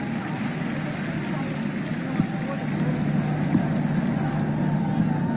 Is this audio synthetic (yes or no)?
no